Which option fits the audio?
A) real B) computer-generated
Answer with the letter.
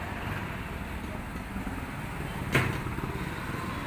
A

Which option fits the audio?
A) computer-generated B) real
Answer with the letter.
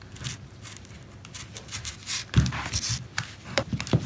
A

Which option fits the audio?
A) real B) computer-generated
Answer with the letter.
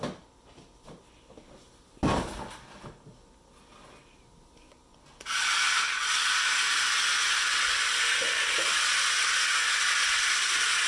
A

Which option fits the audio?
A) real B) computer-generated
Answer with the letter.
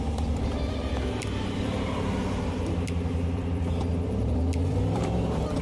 B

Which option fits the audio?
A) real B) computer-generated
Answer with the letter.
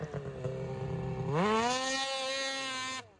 A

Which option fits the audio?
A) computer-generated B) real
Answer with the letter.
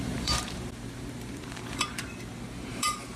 A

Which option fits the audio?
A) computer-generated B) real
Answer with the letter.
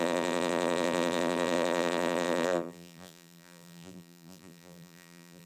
A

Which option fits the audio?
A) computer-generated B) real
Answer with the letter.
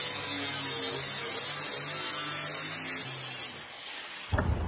B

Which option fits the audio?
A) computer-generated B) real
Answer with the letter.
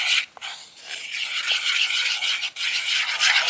B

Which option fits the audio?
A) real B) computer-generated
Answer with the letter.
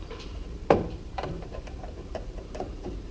B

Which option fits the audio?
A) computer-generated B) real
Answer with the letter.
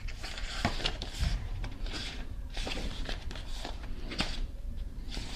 A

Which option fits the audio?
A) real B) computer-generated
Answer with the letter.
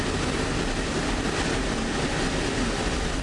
A